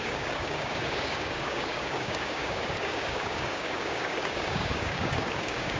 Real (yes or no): no